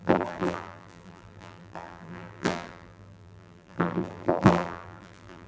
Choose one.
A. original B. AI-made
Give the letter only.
B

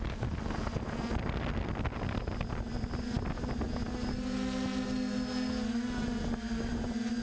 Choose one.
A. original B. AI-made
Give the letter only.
A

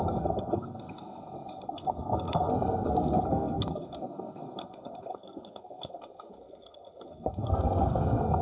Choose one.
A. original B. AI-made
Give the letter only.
B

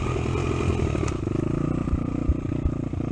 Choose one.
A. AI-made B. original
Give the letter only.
B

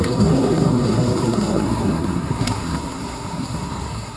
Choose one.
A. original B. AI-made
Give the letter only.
B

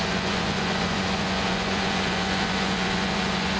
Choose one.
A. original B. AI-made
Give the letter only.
B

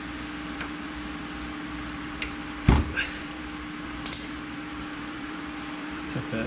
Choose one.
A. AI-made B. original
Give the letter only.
A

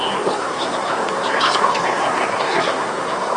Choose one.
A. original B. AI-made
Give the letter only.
B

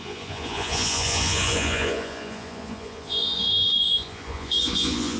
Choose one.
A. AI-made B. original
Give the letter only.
A